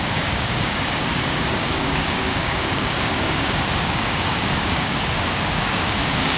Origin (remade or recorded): remade